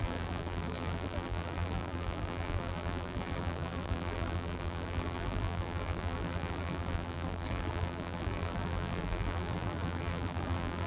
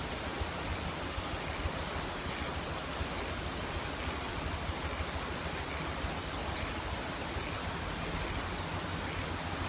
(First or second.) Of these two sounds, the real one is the second